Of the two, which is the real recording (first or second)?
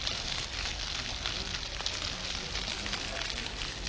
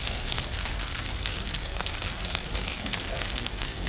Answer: first